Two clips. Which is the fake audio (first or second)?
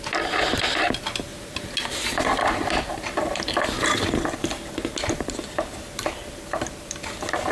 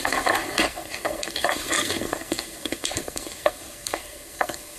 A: second